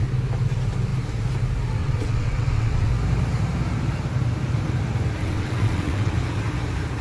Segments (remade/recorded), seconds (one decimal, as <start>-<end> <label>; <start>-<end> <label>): 0.0-1.8 recorded; 1.8-2.9 remade; 2.9-5.2 recorded; 5.2-6.1 remade; 6.1-7.0 recorded